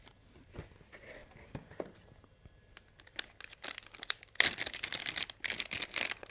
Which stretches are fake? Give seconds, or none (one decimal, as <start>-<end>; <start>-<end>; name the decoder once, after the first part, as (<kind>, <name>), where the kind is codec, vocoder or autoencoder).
none